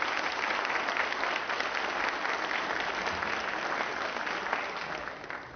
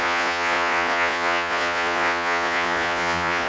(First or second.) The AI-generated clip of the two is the second